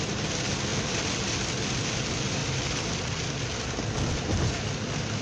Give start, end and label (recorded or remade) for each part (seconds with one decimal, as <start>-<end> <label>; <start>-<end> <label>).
0.0-0.7 recorded; 0.7-1.4 remade; 1.4-5.2 recorded